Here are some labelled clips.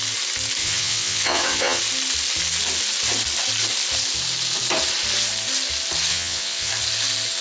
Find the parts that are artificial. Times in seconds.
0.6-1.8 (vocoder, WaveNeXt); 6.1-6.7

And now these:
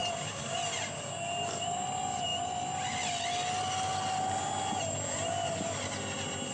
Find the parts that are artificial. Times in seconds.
none

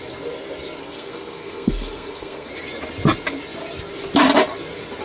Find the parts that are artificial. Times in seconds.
0.8-2.5 (codec, SNAC)